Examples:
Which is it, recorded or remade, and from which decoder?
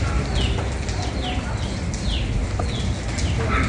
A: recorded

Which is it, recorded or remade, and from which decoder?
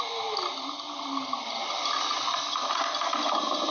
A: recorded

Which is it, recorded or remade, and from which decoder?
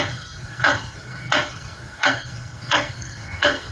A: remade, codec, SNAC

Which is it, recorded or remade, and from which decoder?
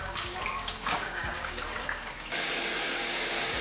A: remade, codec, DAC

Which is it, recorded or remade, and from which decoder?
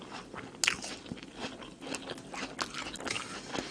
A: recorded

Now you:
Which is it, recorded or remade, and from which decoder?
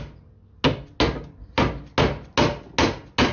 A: recorded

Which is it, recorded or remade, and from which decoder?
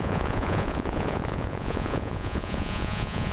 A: remade, vocoder, Vocos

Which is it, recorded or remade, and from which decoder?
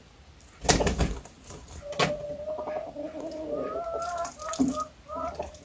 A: recorded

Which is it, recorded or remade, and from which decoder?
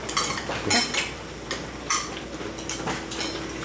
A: recorded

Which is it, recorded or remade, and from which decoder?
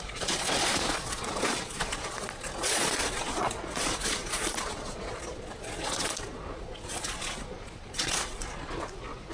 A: remade, vocoder, Vocos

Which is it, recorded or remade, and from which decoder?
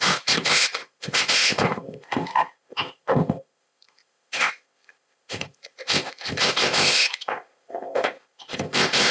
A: remade, codec, ZipCodec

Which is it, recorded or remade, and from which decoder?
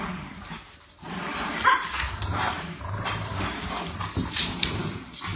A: remade, vocoder, BigVGAN v2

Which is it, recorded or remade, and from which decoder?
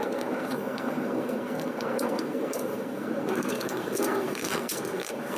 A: remade, codec, SNAC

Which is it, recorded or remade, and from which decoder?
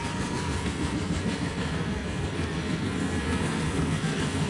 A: remade, codec, SNAC